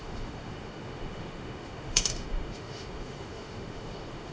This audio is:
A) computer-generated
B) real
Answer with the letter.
A